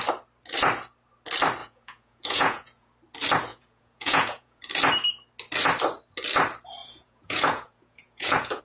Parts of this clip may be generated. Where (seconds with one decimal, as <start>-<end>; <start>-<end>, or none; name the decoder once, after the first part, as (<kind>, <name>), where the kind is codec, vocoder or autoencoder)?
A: 1.6-2.9 (vocoder, Vocos); 3.5-4.6; 6.8-8.6